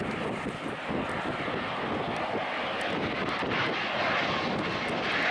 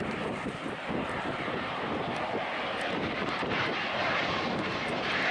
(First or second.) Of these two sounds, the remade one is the second